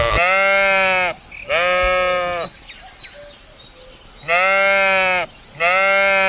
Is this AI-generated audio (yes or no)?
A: no